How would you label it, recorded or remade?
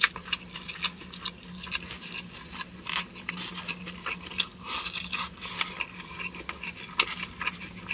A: recorded